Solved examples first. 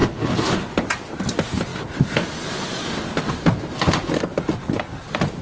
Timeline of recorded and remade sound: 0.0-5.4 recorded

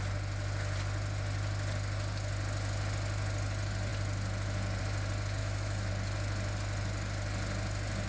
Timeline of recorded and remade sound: 0.0-5.4 recorded; 5.4-5.9 remade; 5.9-8.1 recorded

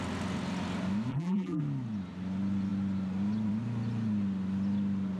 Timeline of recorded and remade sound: 0.0-1.1 recorded; 1.1-1.6 remade; 1.6-5.2 recorded

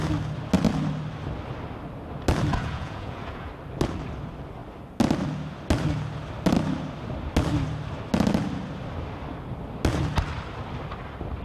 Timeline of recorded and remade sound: 0.0-2.5 recorded; 2.5-3.5 remade; 3.5-11.4 recorded

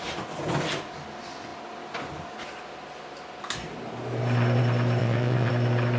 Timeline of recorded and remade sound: 0.0-5.0 recorded; 5.0-5.5 remade; 5.5-6.0 recorded

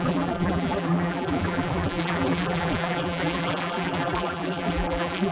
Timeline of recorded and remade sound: 0.0-5.3 remade

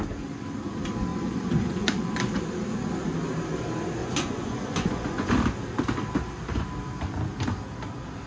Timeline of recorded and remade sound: 0.0-1.1 recorded; 1.1-2.1 remade; 2.1-4.0 recorded; 4.0-5.3 remade; 5.3-8.3 recorded

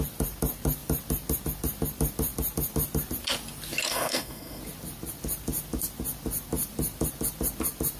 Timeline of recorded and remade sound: 0.0-3.9 recorded; 3.9-4.6 remade; 4.6-8.0 recorded